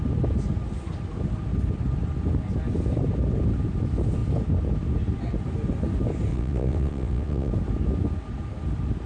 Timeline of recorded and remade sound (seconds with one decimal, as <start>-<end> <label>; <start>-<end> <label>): 0.0-6.3 recorded; 6.3-7.5 remade; 7.5-9.1 recorded